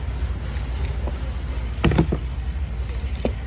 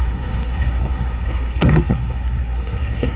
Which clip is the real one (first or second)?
first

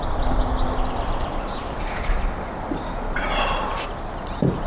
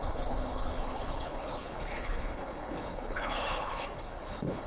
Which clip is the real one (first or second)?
first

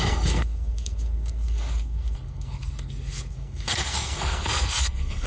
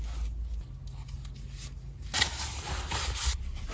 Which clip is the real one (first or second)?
second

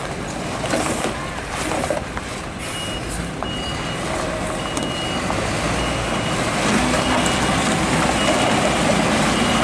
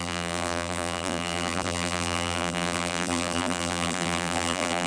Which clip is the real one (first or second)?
first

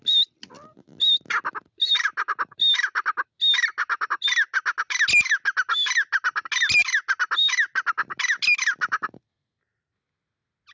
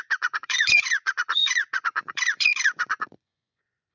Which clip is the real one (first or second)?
first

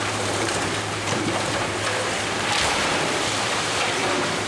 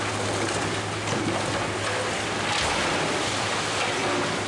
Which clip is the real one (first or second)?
second